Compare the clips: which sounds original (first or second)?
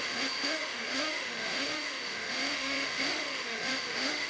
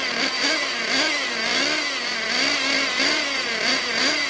second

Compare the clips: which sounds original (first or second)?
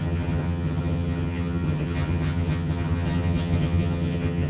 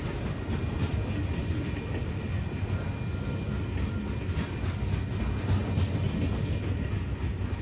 second